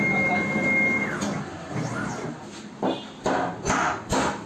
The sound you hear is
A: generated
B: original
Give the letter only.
B